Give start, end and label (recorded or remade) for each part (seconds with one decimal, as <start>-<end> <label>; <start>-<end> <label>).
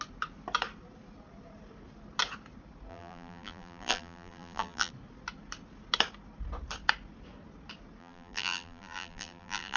0.0-2.9 recorded; 2.9-4.9 remade; 4.9-8.0 recorded; 8.0-9.8 remade